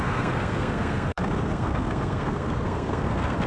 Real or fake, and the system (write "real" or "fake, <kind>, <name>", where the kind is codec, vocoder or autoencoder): fake, codec, SNAC